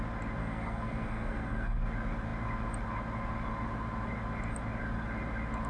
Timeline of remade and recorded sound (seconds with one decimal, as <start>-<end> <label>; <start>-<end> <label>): 0.0-0.4 recorded; 0.4-1.8 remade; 1.8-5.7 recorded